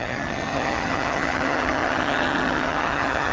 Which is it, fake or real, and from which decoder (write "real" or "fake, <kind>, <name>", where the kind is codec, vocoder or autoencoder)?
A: fake, vocoder, HiFi-GAN